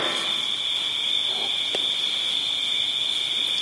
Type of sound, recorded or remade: recorded